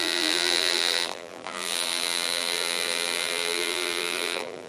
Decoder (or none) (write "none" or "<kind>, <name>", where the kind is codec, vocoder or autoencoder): vocoder, BigVGAN v2